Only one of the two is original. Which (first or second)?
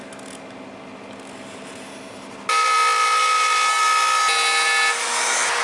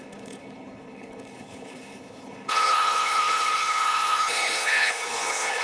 first